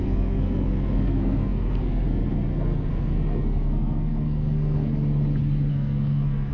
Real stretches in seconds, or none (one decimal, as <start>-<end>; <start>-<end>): 4.9-5.7